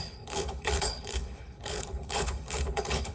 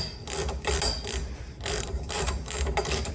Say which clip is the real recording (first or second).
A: second